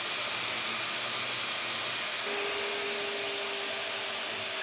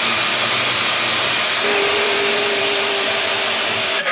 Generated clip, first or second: second